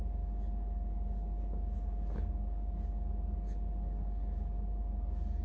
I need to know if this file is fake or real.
real